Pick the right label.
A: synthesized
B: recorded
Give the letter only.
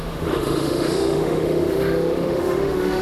A